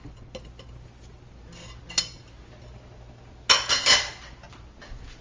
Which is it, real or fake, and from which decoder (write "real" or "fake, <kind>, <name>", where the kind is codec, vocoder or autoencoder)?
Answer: real